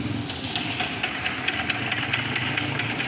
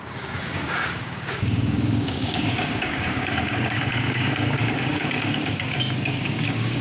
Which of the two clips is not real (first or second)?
second